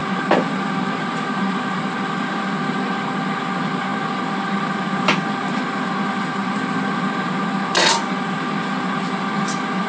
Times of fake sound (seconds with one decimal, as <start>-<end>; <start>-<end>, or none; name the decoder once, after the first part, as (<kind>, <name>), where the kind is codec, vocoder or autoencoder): 0.0-2.5 (vocoder, BigVGAN v2); 6.4-7.5